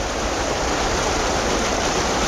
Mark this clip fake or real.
real